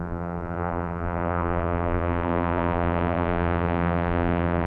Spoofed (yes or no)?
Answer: yes